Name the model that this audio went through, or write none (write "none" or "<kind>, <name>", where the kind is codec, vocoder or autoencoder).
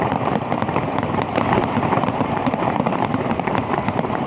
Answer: vocoder, BigVGAN v2